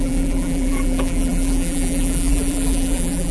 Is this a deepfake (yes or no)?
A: yes